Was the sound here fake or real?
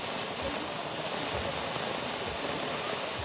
real